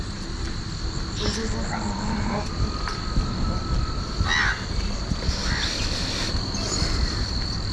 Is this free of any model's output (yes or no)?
yes